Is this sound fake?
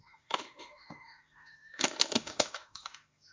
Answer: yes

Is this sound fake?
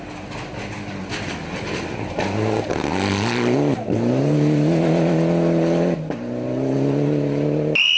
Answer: no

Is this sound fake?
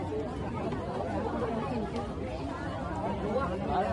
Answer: no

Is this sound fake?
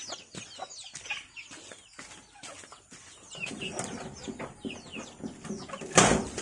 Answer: no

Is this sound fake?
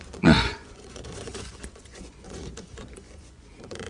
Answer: yes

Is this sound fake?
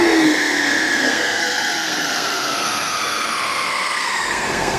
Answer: yes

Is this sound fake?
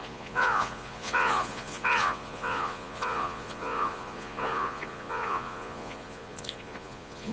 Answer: yes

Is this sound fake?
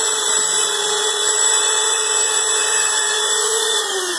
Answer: yes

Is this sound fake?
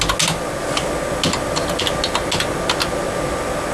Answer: no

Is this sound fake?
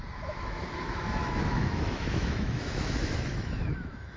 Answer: yes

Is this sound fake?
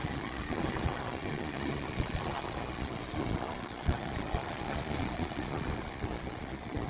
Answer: yes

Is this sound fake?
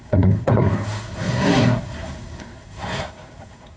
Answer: yes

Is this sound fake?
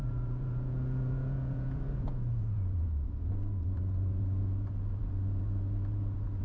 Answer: yes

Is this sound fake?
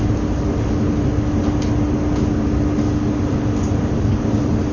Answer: no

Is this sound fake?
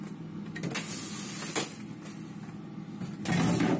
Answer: no